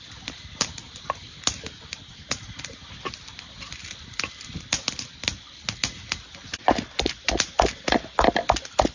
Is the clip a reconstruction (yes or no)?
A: no